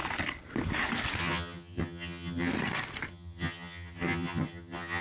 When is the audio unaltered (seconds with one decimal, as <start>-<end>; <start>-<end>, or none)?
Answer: 0.0-1.2; 2.5-3.1